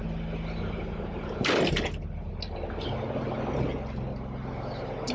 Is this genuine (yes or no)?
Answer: yes